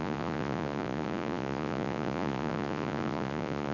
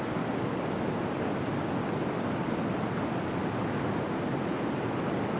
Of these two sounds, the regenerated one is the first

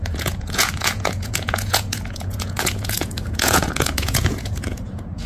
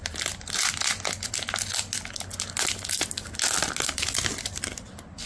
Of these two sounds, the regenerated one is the first